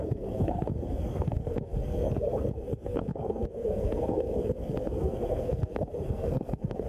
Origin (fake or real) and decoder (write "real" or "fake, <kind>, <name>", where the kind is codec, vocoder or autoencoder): fake, codec, SNAC